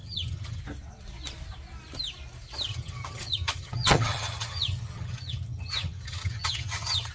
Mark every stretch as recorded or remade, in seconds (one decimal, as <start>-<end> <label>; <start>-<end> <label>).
0.0-0.6 remade; 0.6-2.7 recorded; 2.7-7.1 remade

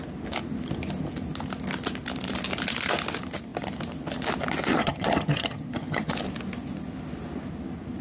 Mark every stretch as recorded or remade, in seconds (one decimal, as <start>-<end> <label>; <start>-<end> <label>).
0.0-4.7 recorded; 4.7-6.1 remade; 6.1-8.0 recorded